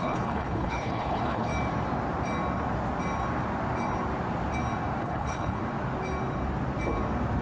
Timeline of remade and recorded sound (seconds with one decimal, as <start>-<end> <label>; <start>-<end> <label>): 0.0-1.5 remade; 1.5-5.0 recorded; 5.0-5.6 remade; 5.6-7.4 recorded

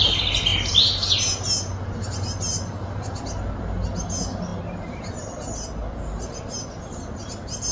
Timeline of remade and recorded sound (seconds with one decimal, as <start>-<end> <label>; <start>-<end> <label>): 0.0-7.7 recorded